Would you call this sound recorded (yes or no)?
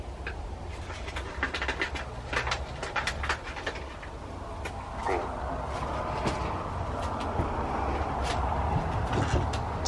yes